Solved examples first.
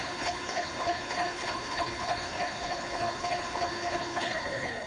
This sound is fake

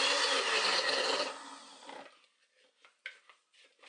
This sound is real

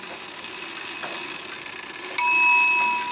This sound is real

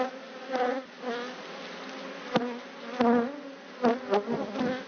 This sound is real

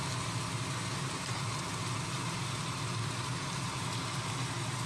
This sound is real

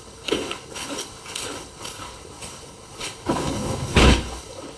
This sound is fake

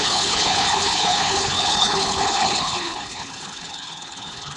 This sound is fake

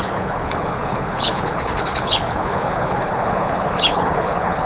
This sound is fake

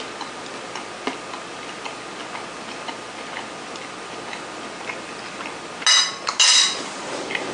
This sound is real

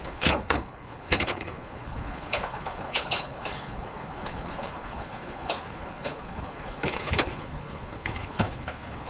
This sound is fake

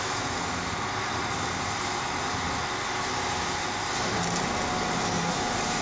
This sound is real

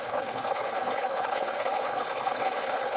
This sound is fake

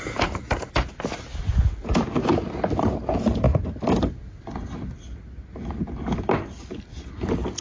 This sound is real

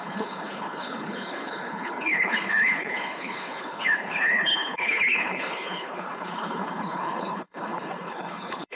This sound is fake